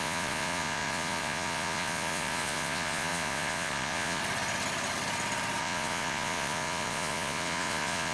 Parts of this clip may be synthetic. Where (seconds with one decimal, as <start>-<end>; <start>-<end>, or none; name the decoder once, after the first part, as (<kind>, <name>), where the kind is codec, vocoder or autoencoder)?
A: 0.0-4.2 (vocoder, Vocos); 5.6-8.1